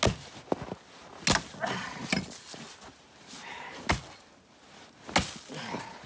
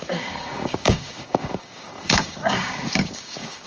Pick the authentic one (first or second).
first